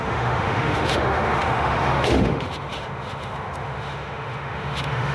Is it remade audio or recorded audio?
remade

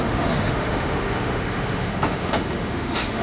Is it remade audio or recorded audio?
remade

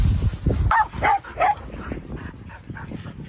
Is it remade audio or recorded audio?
recorded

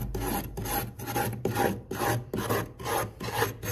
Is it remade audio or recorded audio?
recorded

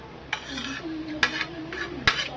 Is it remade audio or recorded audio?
recorded